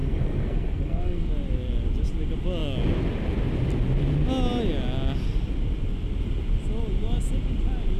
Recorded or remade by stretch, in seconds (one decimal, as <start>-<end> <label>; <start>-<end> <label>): 0.0-1.3 remade; 1.3-8.0 recorded